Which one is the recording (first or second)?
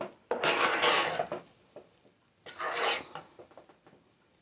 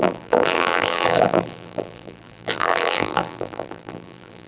first